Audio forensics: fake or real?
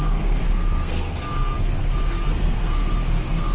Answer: fake